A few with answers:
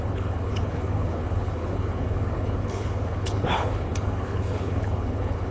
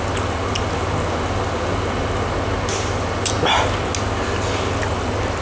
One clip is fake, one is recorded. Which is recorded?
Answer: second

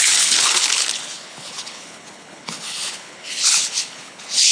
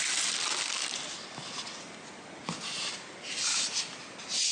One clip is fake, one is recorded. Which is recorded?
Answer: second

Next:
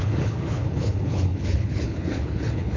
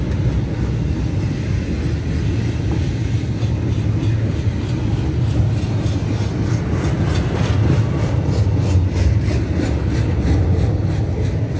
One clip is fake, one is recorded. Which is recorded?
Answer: second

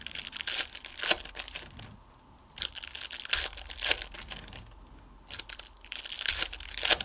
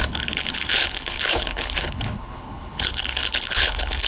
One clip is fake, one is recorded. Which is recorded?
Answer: first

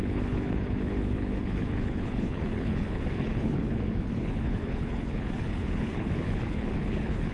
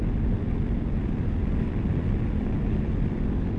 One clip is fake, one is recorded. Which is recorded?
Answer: second